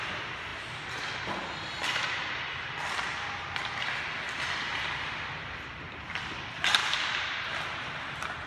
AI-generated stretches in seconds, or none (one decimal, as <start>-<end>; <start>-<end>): none